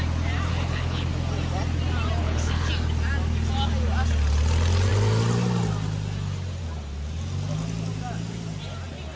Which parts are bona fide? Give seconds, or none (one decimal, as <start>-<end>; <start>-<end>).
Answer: 0.0-0.5; 1.1-2.2; 2.7-9.2